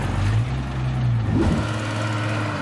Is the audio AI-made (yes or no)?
no